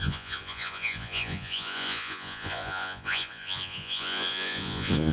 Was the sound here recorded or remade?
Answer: remade